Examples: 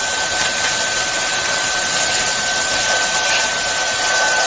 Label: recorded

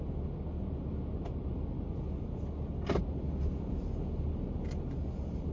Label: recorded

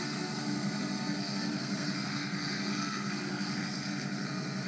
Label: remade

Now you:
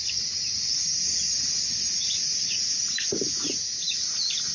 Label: recorded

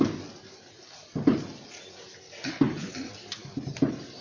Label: recorded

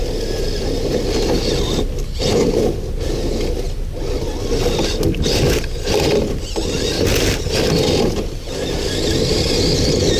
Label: recorded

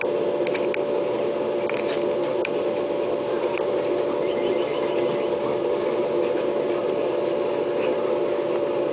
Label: recorded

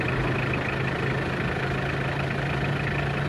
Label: recorded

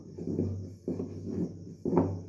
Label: recorded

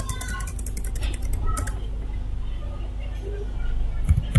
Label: recorded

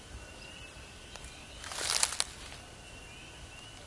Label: recorded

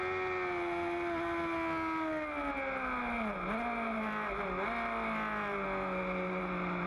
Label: recorded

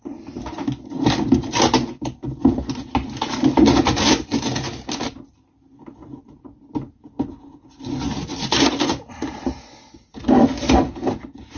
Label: recorded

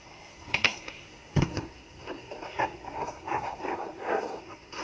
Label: remade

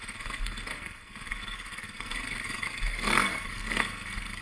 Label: remade